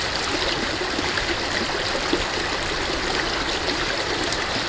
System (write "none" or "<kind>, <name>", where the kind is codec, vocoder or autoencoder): none